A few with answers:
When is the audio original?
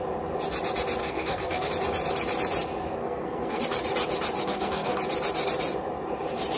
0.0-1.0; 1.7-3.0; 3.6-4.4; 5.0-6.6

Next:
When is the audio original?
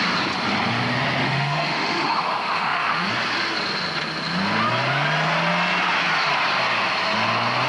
0.0-1.2; 3.1-7.7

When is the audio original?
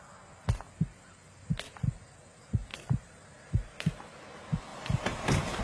0.0-2.7; 4.2-4.7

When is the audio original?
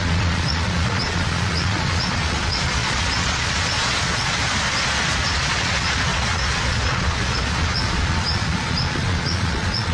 4.4-5.1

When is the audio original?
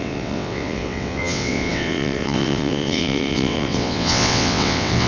none